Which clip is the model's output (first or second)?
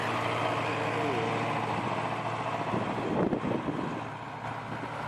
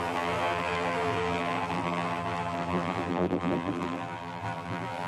second